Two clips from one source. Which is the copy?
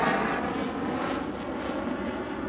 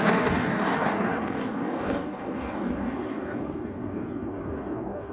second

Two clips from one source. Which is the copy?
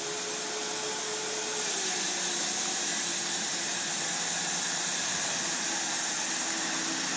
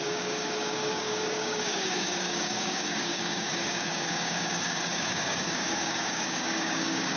second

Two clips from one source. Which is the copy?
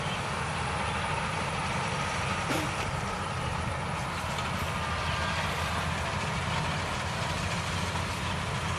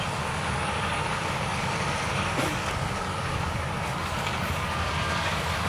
second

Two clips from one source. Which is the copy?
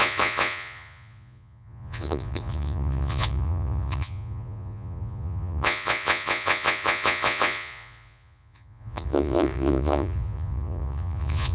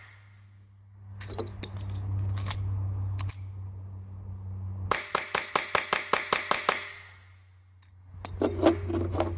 first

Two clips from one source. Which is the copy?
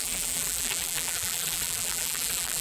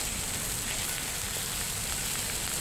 first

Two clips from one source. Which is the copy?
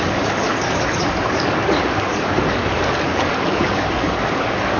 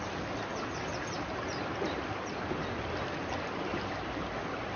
first